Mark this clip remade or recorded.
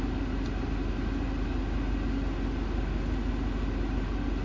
recorded